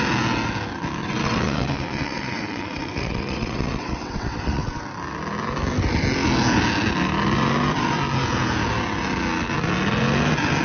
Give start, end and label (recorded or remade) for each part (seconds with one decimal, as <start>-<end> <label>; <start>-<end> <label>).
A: 0.0-1.0 recorded; 1.0-4.8 remade; 4.8-10.6 recorded